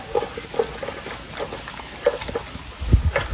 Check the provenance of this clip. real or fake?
real